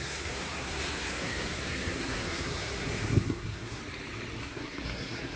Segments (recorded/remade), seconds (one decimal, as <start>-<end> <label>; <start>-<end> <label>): 0.0-3.8 remade; 3.8-4.4 recorded; 4.4-5.4 remade